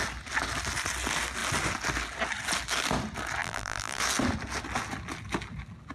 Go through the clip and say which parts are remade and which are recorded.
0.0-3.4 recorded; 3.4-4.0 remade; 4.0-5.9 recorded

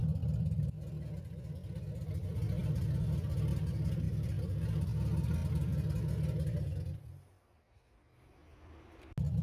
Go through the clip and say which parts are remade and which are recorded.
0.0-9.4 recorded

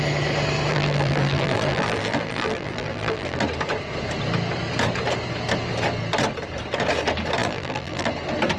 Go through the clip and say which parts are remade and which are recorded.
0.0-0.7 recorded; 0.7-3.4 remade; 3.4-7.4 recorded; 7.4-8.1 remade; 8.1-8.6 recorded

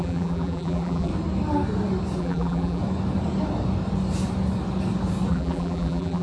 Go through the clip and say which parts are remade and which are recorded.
0.0-1.1 remade; 1.1-2.2 recorded; 2.2-2.8 remade; 2.8-5.3 recorded; 5.3-6.2 remade

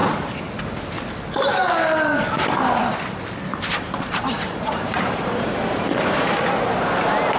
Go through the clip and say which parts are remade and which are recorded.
0.0-3.5 recorded; 3.5-6.2 remade; 6.2-7.4 recorded